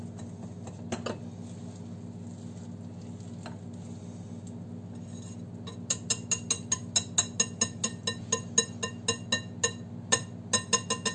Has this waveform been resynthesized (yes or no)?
no